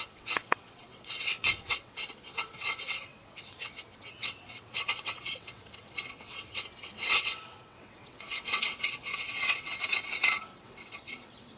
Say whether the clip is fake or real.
fake